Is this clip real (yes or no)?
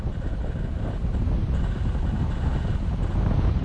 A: yes